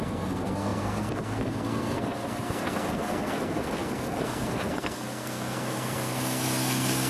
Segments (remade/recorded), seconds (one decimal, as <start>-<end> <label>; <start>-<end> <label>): 0.0-7.1 remade